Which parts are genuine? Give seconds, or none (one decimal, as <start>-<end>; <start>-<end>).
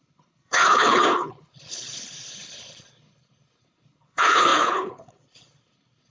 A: none